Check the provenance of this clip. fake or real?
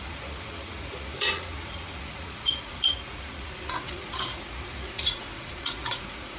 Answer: fake